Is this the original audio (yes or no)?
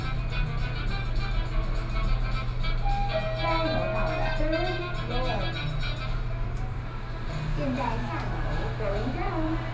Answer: yes